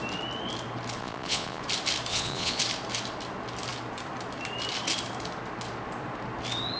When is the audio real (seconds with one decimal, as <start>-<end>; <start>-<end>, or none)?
0.0-1.0; 1.6-2.1; 2.6-6.8